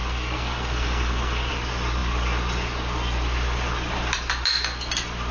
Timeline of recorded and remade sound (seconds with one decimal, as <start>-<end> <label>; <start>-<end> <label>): 0.0-1.5 remade; 1.5-5.3 recorded